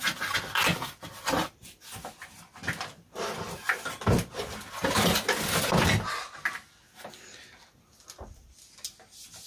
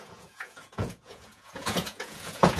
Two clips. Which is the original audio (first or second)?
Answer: first